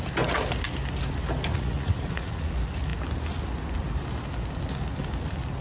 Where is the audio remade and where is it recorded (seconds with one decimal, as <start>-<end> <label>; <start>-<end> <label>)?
0.0-1.5 recorded; 1.5-2.5 remade; 2.5-5.6 recorded